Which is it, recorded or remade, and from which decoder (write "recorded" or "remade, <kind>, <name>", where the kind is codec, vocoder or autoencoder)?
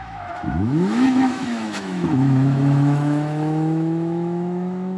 remade, autoencoder, DAC-VAE